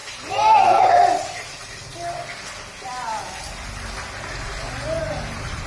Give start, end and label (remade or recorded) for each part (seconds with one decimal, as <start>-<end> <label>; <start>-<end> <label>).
0.0-1.6 remade; 1.6-5.0 recorded; 5.0-5.7 remade